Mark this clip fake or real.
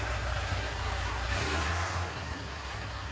fake